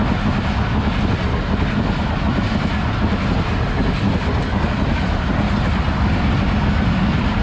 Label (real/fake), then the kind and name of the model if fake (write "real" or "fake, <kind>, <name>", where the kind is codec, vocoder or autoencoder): real